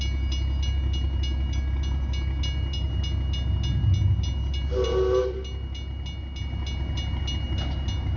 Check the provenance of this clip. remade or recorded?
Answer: recorded